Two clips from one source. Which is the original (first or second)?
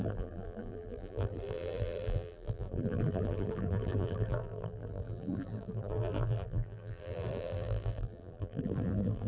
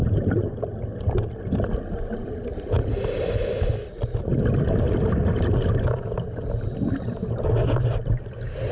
second